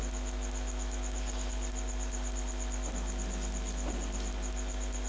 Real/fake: real